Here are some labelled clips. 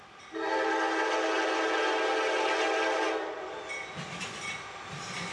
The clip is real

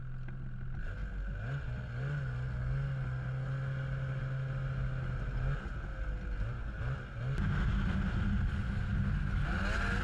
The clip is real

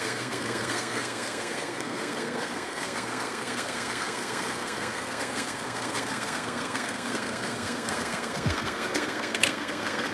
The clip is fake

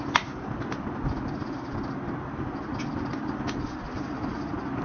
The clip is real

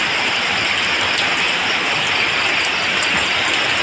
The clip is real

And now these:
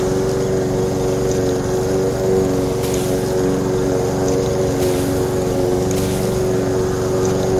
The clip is real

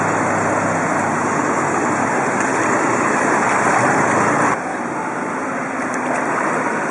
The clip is real